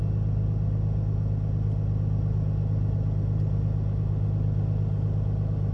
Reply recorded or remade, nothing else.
recorded